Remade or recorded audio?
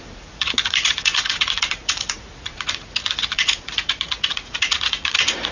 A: remade